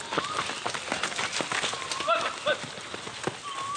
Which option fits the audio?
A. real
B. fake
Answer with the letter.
A